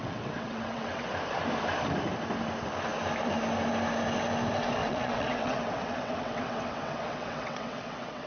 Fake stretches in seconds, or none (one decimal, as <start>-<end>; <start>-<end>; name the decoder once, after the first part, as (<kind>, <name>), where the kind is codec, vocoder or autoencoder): 0.0-1.1 (vocoder, WaveNeXt); 4.8-8.3